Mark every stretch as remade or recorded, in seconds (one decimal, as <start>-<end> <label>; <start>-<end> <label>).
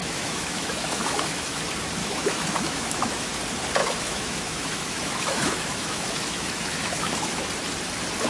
0.0-1.6 remade; 1.6-2.0 recorded; 2.0-3.4 remade; 3.4-3.8 recorded; 3.8-7.5 remade; 7.5-8.3 recorded